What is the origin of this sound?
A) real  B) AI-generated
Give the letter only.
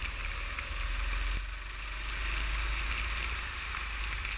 A